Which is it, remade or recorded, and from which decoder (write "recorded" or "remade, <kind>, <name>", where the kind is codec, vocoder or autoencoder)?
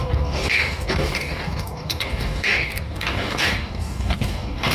remade, codec, DAC